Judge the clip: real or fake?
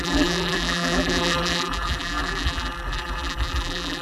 fake